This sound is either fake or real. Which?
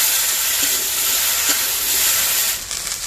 real